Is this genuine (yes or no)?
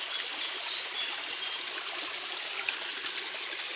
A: yes